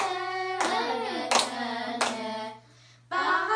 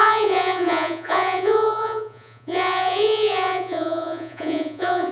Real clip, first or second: first